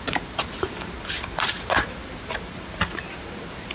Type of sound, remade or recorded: remade